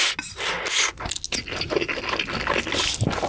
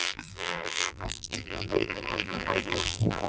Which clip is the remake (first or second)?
second